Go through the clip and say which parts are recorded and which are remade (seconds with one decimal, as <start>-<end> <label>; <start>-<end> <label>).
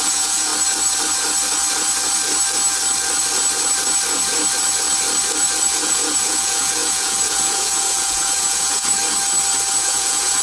0.0-0.5 remade; 0.5-5.6 recorded; 5.6-9.0 remade; 9.0-9.7 recorded; 9.7-10.4 remade